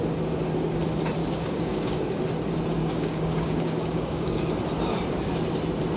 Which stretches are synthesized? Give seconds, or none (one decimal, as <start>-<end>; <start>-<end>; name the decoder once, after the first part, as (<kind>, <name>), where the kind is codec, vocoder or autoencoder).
1.2-2.2 (codec, DAC); 2.7-4.5